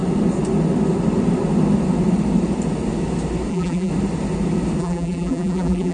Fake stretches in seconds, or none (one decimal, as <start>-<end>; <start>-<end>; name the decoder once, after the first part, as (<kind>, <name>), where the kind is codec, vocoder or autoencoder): 3.5-3.9 (vocoder, BigVGAN v2); 4.8-5.9